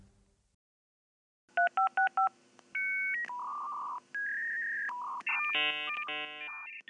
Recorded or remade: recorded